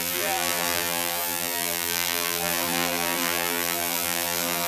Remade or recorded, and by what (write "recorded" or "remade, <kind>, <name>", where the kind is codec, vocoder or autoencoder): remade, vocoder, BigVGAN v2